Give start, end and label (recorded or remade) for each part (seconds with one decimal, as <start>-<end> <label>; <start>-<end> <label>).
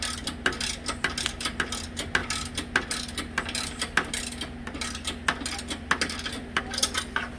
0.0-7.4 recorded